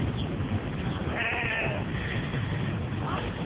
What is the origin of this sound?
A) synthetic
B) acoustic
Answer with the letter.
B